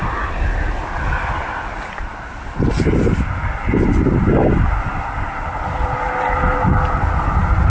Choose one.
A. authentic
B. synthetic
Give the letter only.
A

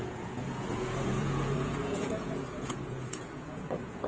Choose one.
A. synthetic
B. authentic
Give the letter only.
A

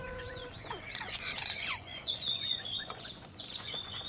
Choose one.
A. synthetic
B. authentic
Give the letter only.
A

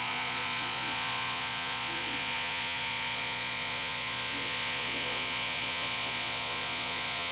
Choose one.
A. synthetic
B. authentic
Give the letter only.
A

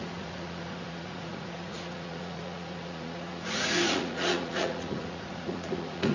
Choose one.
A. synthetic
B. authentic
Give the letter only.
A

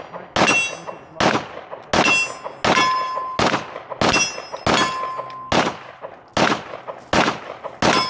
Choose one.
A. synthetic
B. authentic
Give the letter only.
B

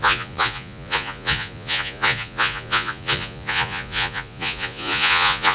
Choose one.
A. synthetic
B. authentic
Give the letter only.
A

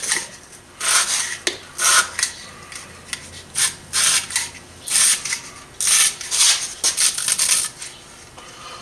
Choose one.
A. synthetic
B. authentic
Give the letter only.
B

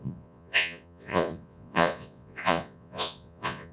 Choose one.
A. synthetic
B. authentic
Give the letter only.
A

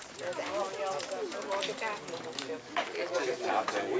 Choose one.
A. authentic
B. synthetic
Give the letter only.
A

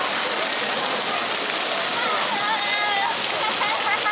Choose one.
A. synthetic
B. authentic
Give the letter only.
B